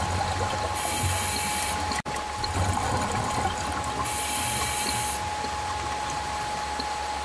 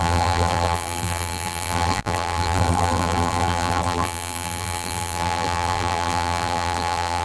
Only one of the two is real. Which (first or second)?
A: first